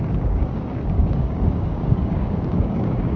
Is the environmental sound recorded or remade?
remade